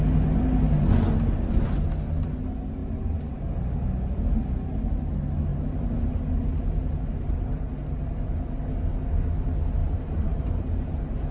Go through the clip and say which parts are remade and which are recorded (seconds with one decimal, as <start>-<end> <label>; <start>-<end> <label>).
0.0-2.8 recorded; 2.8-3.4 remade; 3.4-5.5 recorded; 5.5-6.2 remade; 6.2-9.8 recorded; 9.8-10.5 remade; 10.5-11.3 recorded

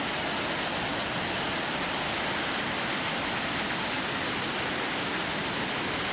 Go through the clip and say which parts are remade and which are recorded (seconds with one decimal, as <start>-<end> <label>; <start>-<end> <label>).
0.0-0.9 recorded; 0.9-4.6 remade; 4.6-6.1 recorded

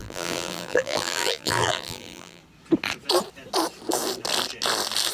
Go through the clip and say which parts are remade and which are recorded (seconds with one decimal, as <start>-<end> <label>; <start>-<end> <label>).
0.0-2.4 remade; 2.4-5.1 recorded

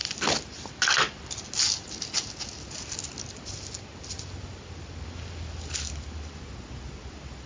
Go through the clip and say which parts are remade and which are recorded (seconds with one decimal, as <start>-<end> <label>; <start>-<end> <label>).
0.0-0.7 remade; 0.7-7.5 recorded